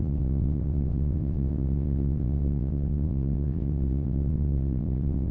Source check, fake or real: fake